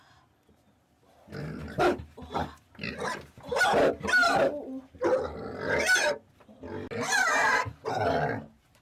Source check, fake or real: real